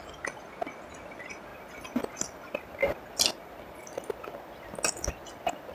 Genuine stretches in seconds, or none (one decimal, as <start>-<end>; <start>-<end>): 0.0-5.7